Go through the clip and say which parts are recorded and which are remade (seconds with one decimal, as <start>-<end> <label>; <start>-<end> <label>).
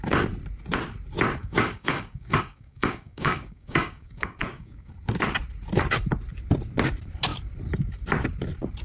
0.0-1.4 recorded; 1.4-4.9 remade; 4.9-8.8 recorded